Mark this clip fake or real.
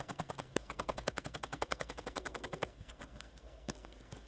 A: fake